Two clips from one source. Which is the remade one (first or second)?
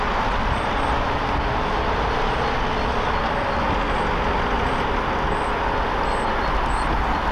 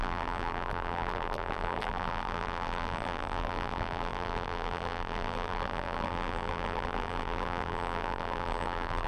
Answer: second